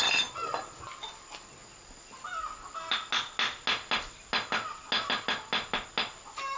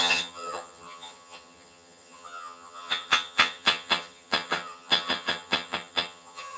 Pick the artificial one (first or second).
second